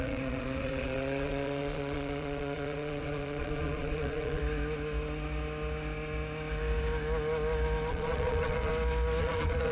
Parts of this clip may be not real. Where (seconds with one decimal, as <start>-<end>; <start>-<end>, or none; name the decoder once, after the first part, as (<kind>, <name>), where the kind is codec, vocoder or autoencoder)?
0.0-4.4 (vocoder, Vocos); 7.9-8.7; 9.2-9.7

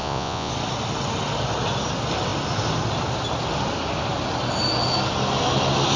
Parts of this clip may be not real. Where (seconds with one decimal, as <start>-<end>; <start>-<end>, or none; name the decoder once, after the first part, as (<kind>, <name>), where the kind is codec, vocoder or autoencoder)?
0.0-0.5 (vocoder, Vocos)

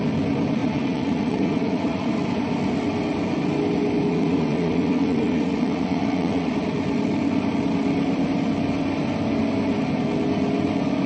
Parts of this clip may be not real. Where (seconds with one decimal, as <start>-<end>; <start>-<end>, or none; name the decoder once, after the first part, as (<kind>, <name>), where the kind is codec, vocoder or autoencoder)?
0.6-2.1 (vocoder, Vocos); 4.1-6.5

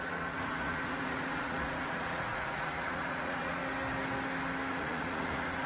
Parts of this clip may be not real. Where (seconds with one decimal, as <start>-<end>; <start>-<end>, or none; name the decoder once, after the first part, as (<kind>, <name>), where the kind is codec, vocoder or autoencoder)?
0.0-3.6 (vocoder, Vocos); 4.7-5.7

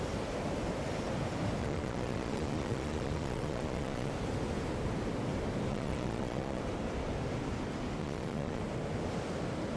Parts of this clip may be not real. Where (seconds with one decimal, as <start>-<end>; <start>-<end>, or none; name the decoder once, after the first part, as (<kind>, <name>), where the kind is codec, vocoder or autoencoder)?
1.6-4.1 (vocoder, Vocos); 5.7-6.6; 8.0-8.6

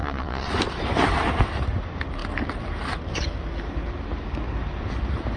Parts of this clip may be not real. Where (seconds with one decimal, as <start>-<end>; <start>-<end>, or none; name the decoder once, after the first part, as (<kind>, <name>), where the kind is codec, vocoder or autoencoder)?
0.0-0.5 (vocoder, Vocos)

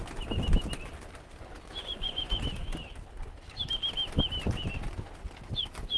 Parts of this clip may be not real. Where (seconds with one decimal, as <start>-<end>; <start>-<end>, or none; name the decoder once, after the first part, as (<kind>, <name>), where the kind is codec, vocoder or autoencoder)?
1.8-2.8 (vocoder, Vocos)